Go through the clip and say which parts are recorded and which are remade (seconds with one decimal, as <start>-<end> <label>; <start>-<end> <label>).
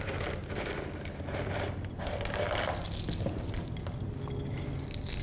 0.0-5.2 recorded